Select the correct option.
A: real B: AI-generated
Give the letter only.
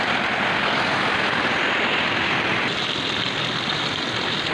B